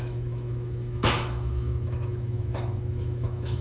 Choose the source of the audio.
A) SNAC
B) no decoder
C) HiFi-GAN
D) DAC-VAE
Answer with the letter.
D